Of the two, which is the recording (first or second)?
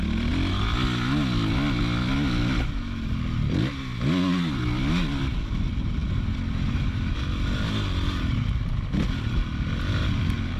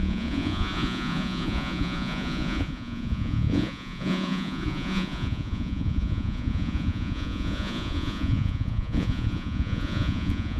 first